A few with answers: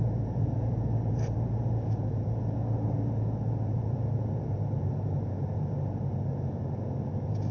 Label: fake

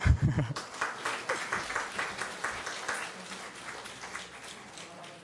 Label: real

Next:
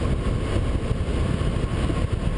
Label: real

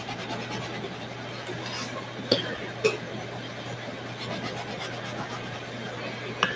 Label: real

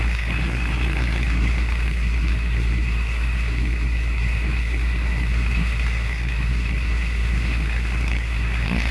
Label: fake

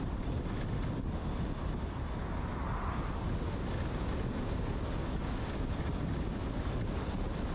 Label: real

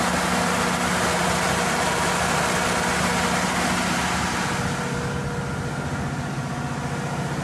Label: real